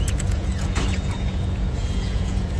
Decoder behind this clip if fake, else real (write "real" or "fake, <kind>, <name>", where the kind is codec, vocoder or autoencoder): fake, vocoder, Vocos